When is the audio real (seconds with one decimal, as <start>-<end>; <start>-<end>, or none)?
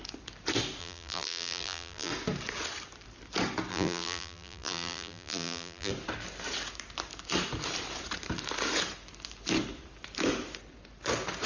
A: 0.0-0.8; 2.1-3.7; 5.9-11.5